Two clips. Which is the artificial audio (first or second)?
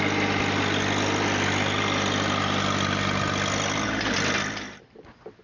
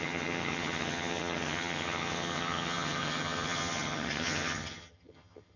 second